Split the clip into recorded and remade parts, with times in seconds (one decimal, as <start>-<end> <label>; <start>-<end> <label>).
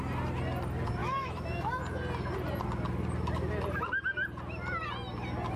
0.0-1.0 recorded; 1.0-1.8 remade; 1.8-5.6 recorded